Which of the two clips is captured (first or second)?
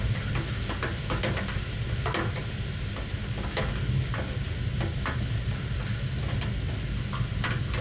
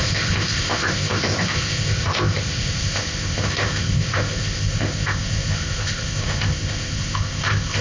first